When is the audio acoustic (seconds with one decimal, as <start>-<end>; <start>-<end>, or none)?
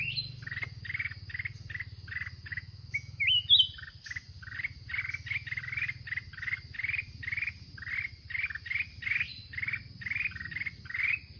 0.0-2.5; 3.4-11.4